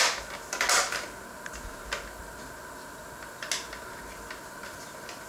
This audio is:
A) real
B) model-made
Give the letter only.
A